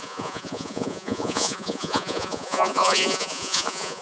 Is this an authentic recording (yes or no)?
no